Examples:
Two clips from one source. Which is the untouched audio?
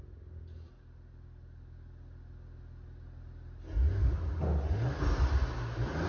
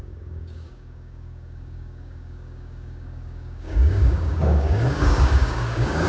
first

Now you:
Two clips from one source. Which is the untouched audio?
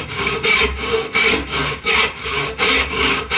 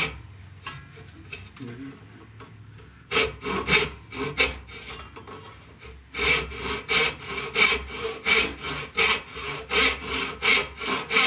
second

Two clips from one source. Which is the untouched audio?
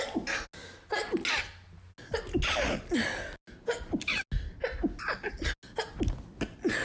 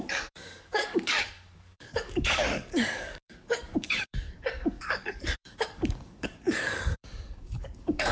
first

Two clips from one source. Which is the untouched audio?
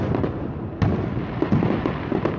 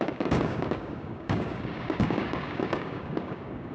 first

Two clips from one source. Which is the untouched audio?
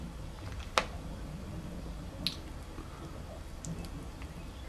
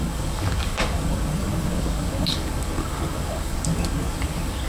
first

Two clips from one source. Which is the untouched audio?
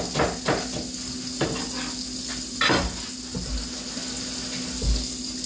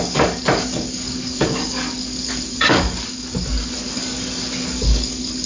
first